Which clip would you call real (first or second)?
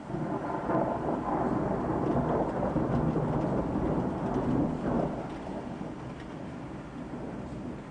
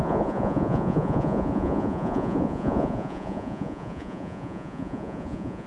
first